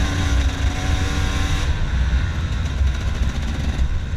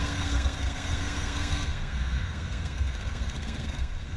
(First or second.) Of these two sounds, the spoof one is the second